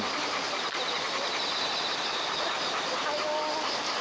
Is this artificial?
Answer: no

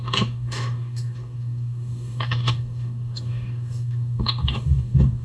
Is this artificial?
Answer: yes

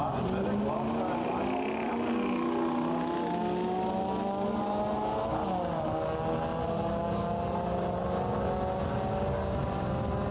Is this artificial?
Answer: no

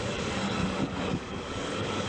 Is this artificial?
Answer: yes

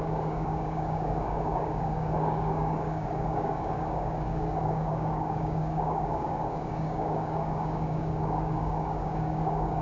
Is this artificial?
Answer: yes